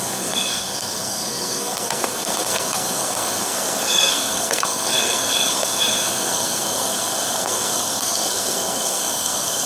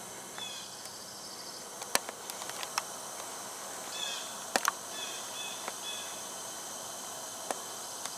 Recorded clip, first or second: second